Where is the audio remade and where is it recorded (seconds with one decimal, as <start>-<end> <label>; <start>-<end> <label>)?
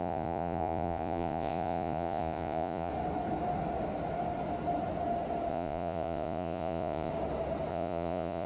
0.0-2.9 remade; 2.9-5.5 recorded; 5.5-7.1 remade; 7.1-7.7 recorded; 7.7-8.5 remade